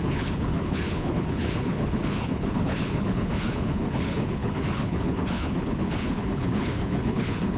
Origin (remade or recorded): remade